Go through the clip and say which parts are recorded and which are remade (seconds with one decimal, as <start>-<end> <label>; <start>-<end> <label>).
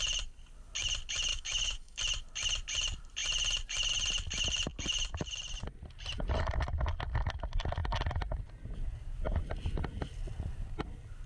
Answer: 0.0-1.3 recorded; 1.3-2.0 remade; 2.0-11.3 recorded